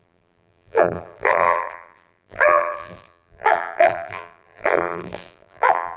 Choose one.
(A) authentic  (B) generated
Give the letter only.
B